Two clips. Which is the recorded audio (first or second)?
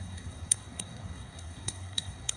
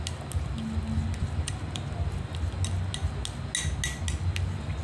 second